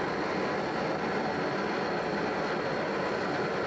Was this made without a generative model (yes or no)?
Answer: yes